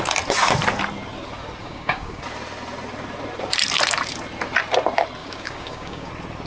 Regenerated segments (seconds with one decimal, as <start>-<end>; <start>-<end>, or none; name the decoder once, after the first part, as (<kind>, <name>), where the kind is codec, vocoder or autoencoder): 1.6-2.2 (codec, DAC); 5.2-6.1